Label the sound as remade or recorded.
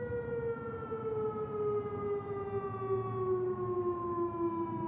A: recorded